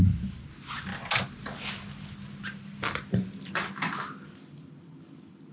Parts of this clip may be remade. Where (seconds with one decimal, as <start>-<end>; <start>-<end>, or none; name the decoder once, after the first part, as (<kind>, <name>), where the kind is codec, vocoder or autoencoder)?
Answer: none